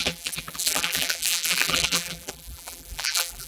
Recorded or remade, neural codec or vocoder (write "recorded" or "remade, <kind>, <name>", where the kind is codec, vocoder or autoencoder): remade, vocoder, BigVGAN v2